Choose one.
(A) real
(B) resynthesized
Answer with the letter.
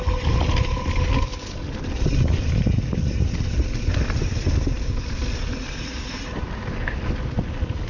A